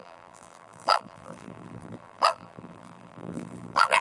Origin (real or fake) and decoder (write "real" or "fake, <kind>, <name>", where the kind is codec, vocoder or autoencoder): fake, vocoder, BigVGAN v2